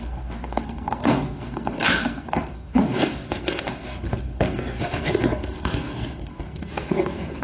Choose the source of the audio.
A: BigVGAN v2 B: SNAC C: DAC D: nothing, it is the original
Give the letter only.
B